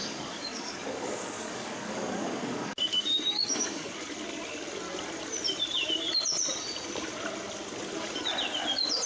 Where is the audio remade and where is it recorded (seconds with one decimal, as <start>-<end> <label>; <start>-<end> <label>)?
0.0-4.0 remade; 4.0-9.1 recorded